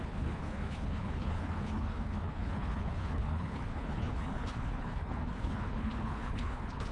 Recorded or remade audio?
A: remade